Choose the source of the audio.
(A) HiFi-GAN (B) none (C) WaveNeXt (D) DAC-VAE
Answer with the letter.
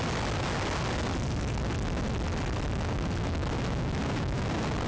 B